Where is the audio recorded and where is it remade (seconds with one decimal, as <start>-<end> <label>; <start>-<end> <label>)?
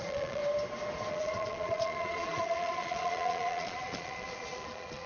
0.0-0.4 remade; 0.4-1.1 recorded; 1.1-5.1 remade